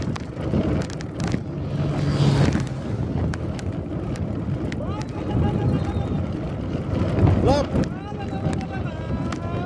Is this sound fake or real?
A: real